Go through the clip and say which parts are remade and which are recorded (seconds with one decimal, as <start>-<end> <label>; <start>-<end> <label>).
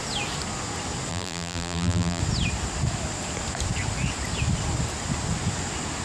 0.0-1.1 recorded; 1.1-2.2 remade; 2.2-6.0 recorded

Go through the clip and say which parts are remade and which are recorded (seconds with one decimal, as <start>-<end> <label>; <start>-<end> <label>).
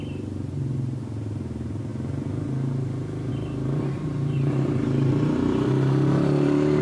0.0-1.9 remade; 1.9-3.3 recorded; 3.3-6.8 remade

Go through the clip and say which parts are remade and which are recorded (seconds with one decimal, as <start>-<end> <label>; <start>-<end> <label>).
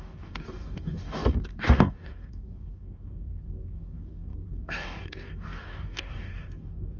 0.0-7.0 remade